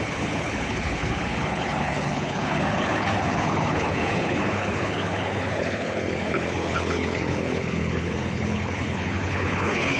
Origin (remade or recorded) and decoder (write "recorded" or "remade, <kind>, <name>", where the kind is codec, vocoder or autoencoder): remade, codec, HILCodec